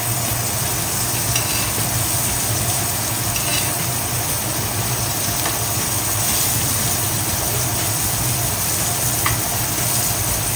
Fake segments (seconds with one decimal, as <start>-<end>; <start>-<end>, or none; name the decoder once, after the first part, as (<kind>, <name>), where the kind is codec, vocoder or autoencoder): 3.5-8.8 (vocoder, BigVGAN v2)